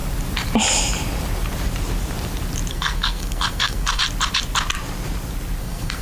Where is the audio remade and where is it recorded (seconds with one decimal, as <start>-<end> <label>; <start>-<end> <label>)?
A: 0.0-2.7 recorded; 2.7-4.0 remade; 4.0-5.6 recorded; 5.6-6.0 remade